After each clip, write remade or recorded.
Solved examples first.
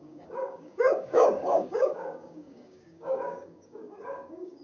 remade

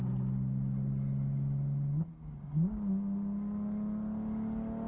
recorded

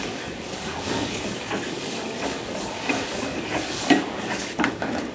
remade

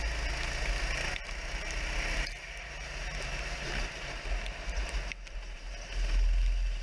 recorded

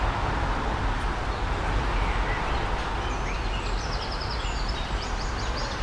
recorded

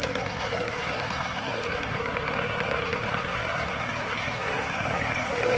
remade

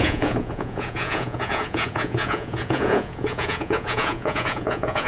remade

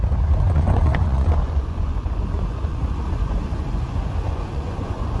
remade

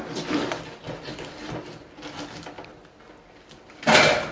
recorded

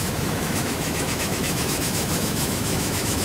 remade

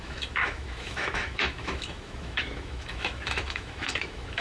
remade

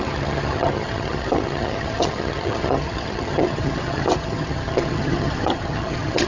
remade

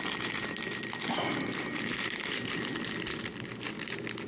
recorded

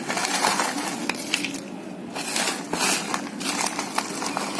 recorded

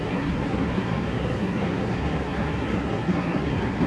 remade